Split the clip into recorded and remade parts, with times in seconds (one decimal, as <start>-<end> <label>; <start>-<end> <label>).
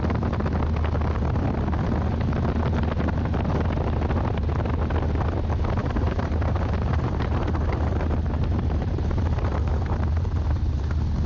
0.0-5.8 recorded; 5.8-10.9 remade; 10.9-11.3 recorded